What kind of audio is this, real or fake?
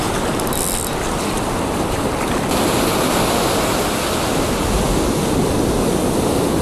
real